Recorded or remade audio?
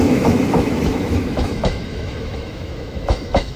remade